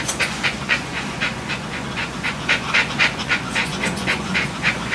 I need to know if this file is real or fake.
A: fake